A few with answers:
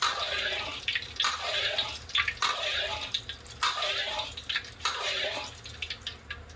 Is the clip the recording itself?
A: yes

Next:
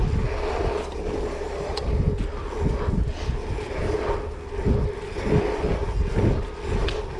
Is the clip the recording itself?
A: yes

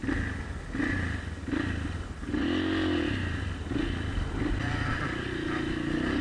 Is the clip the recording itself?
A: yes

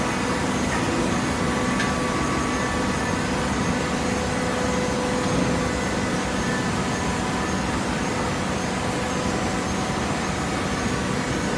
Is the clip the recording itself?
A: yes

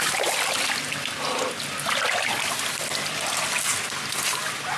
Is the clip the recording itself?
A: yes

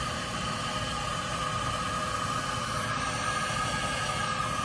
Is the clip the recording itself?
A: yes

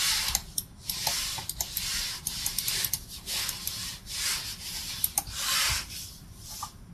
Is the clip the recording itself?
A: yes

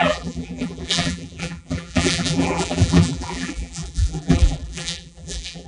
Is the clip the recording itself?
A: no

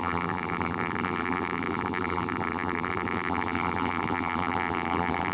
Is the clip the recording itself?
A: no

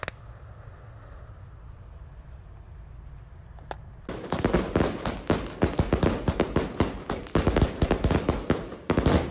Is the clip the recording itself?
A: yes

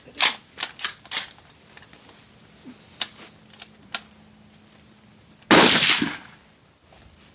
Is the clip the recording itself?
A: yes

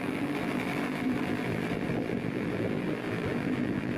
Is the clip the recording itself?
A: no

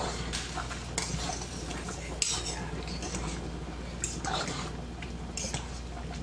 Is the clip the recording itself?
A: yes